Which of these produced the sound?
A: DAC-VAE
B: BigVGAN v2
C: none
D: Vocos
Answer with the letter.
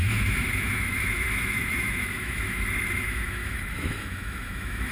A